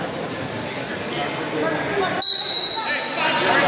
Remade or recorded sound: recorded